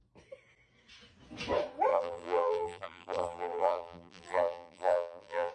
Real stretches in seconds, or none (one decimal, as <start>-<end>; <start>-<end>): 0.0-1.9